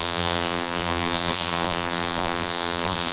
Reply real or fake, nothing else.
fake